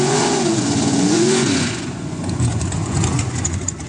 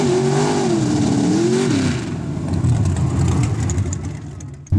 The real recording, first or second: second